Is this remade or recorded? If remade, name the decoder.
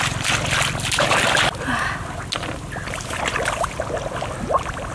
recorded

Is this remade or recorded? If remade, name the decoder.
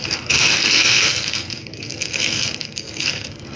remade, codec, SNAC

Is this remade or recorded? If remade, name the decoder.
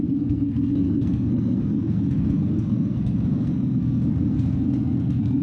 remade, codec, SNAC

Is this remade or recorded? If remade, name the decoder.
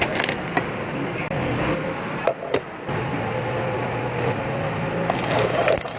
recorded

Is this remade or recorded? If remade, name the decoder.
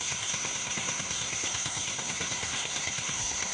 remade, codec, SNAC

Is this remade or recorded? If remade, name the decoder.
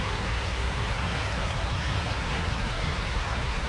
remade, codec, SNAC